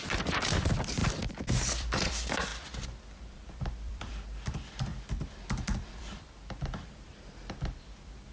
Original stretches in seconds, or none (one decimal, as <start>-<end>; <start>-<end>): 1.0-1.5; 4.9-5.9